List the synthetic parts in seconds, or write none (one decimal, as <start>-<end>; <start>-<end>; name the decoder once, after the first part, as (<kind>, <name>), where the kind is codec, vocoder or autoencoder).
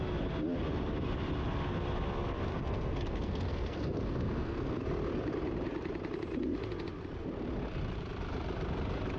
2.5-4.8 (codec, SNAC)